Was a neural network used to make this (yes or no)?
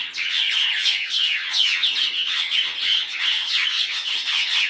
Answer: yes